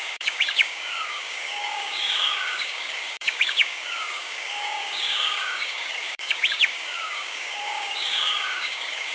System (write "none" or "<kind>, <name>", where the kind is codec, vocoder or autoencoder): codec, DAC